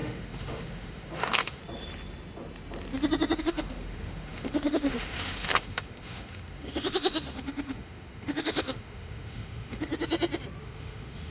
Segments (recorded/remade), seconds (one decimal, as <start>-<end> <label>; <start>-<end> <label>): 0.0-1.6 remade; 1.6-3.4 recorded; 3.4-9.9 remade; 9.9-10.6 recorded; 10.6-11.3 remade